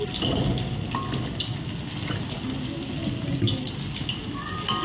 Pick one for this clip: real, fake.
real